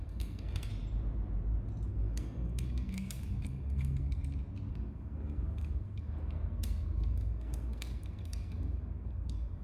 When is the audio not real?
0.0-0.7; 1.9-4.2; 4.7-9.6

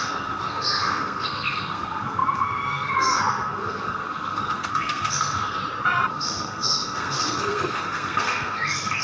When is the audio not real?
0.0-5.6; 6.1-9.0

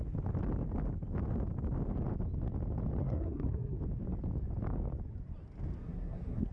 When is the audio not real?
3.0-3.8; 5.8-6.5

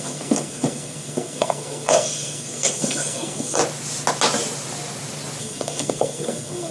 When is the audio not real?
0.0-3.6; 5.4-6.7

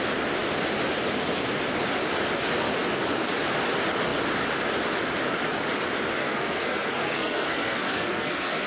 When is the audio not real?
6.2-8.7